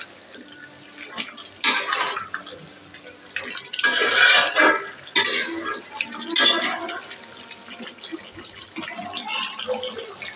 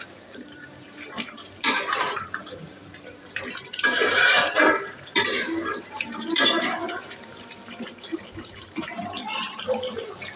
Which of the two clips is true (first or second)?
first